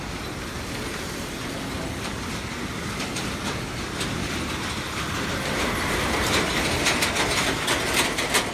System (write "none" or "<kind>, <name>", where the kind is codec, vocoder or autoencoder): none